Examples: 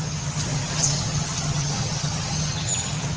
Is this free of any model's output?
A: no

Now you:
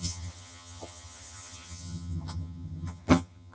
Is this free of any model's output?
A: no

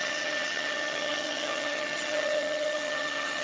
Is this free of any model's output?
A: no